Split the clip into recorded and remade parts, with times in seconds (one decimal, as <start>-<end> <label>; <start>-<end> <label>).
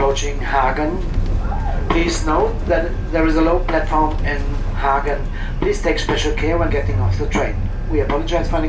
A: 0.0-8.7 recorded